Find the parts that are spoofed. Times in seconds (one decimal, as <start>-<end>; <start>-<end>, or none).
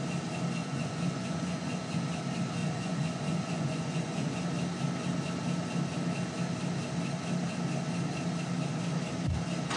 0.6-2.0; 2.6-4.3